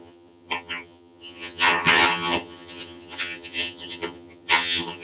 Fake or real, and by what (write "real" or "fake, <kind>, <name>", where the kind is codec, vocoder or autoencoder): fake, vocoder, HiFi-GAN